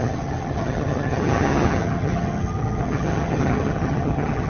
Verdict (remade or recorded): remade